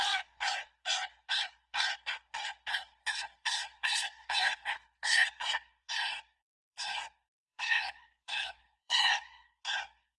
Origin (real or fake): fake